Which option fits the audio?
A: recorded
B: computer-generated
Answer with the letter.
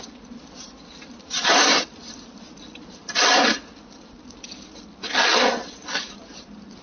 A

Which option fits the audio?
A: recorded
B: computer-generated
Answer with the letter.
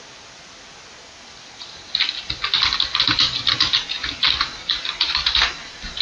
A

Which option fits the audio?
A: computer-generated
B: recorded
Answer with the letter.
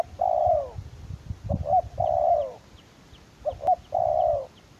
B